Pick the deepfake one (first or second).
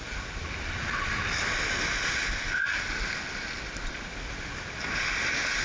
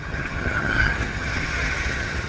second